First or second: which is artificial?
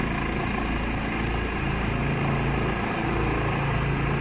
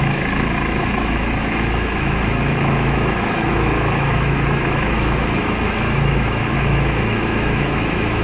second